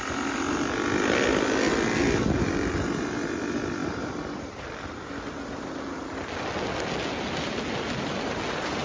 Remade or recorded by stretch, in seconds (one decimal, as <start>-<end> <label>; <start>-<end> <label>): 0.0-8.8 recorded